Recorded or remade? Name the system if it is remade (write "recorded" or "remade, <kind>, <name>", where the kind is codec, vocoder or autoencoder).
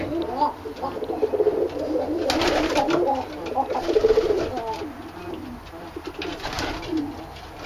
recorded